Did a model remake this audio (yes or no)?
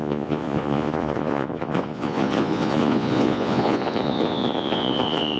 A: yes